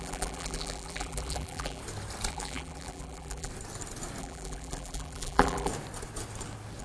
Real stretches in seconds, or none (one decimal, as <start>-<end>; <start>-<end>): 1.8-2.3; 3.5-4.2; 5.7-6.8

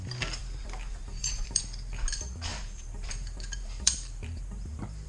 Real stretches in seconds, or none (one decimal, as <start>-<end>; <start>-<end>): 0.0-0.4; 1.6-2.5

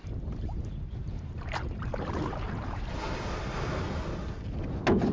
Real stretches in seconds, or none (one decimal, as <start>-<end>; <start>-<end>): 3.1-5.1

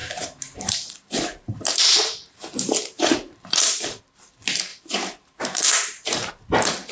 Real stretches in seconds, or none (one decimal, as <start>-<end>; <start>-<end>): 4.0-4.7; 6.3-6.9

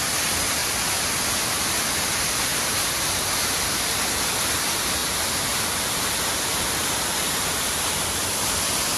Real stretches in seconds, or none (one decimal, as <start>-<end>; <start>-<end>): 0.6-1.9; 2.5-4.1; 5.0-6.1

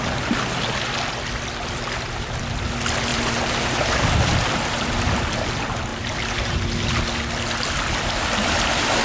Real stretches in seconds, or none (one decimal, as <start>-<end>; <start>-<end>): 0.0-3.1; 4.2-5.9; 6.7-9.0

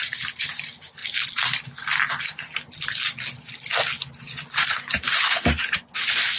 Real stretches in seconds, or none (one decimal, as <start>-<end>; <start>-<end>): 0.0-1.0; 4.8-6.4

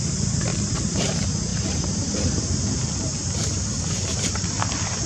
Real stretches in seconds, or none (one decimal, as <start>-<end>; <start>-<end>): 0.0-0.5; 1.1-1.5; 4.6-5.1